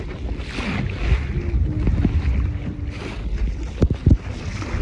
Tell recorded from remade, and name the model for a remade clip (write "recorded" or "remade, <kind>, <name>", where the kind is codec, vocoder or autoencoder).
recorded